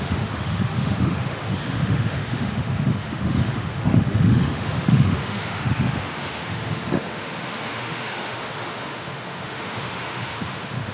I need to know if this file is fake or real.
fake